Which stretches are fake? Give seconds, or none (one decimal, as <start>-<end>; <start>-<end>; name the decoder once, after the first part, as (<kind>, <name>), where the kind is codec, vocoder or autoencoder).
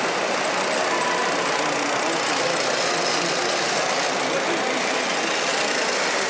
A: none